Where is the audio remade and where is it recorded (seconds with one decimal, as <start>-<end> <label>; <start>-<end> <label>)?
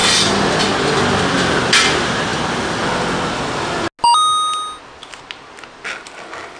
0.0-6.6 recorded